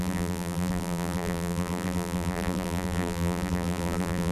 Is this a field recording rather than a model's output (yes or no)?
no